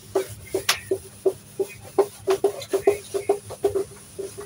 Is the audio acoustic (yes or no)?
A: yes